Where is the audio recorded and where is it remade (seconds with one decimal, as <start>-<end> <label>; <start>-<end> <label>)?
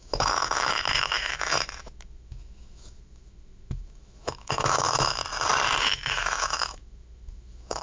0.0-5.2 remade; 5.2-5.8 recorded; 5.8-7.8 remade